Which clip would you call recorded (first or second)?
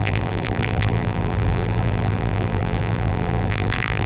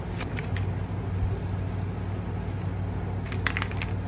second